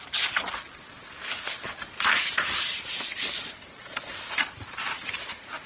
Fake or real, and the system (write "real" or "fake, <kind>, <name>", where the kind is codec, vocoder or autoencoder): real